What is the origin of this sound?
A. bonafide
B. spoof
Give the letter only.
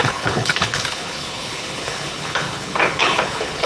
B